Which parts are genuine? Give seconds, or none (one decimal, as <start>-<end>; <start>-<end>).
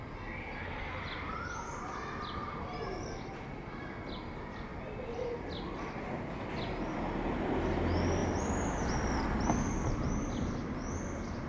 0.0-11.5